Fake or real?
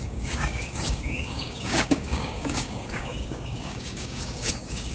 fake